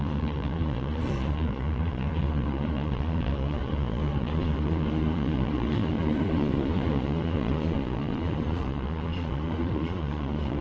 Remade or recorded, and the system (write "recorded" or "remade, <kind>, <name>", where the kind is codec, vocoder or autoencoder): remade, vocoder, Vocos